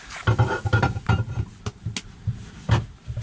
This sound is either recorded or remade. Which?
recorded